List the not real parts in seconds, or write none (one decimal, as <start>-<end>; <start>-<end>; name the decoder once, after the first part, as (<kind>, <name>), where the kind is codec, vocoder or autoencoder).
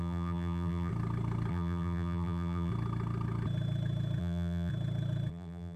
0.0-0.9 (vocoder, BigVGAN v2); 1.5-2.7; 4.2-4.7; 5.3-5.8